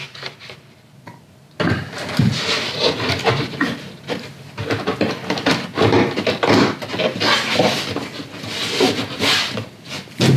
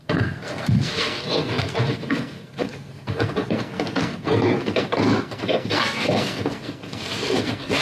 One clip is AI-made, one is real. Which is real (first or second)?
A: first